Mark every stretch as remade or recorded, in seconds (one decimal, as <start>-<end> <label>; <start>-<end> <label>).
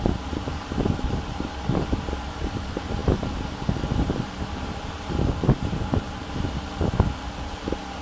0.0-6.2 remade; 6.2-8.0 recorded